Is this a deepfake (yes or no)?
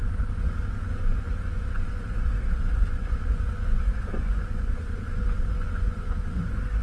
yes